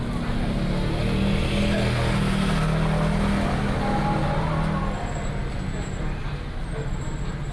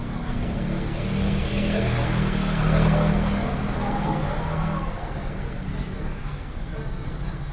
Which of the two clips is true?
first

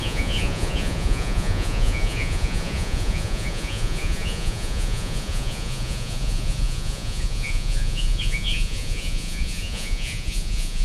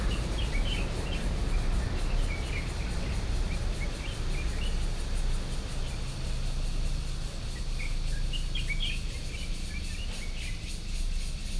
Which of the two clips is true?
second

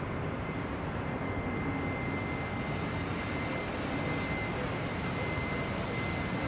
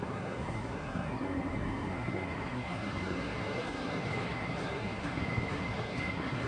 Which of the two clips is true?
first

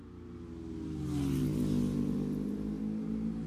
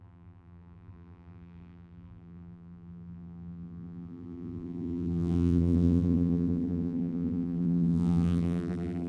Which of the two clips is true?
first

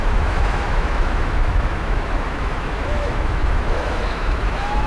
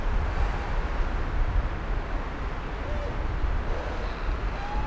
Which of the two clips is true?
second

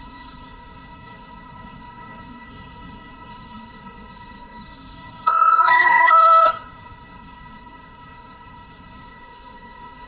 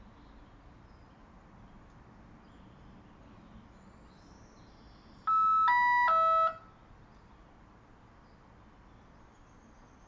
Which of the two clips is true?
second